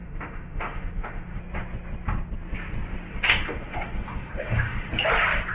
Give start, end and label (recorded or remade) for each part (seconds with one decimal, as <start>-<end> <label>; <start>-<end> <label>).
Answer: 0.0-1.4 remade; 1.4-3.1 recorded; 3.1-4.9 remade; 4.9-5.5 recorded